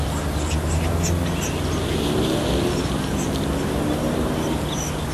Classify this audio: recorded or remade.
recorded